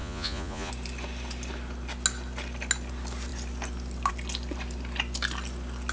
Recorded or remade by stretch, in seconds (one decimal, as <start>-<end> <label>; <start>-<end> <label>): 0.0-0.7 remade; 0.7-5.9 recorded

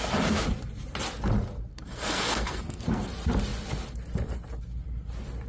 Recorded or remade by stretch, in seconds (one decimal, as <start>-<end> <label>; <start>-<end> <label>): 0.0-1.7 recorded; 1.7-3.1 remade; 3.1-5.5 recorded

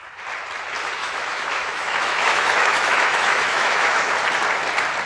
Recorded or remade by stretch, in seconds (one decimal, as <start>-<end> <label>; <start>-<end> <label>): 0.0-1.0 recorded; 1.0-4.1 remade; 4.1-5.1 recorded

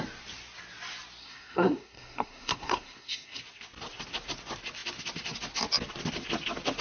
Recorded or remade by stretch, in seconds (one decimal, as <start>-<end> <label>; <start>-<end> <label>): 0.0-1.2 recorded; 1.2-3.4 remade; 3.4-6.8 recorded

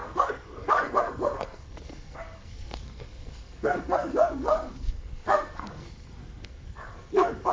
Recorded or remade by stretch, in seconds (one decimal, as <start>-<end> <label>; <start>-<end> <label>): 0.0-7.5 remade